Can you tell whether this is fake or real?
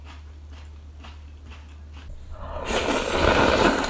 real